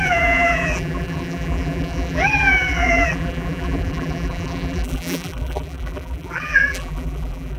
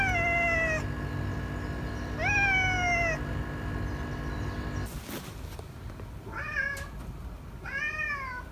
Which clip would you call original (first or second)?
second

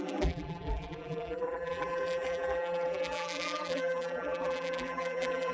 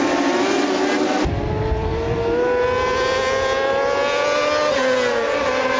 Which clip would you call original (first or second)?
second